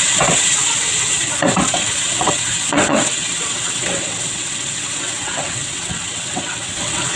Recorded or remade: remade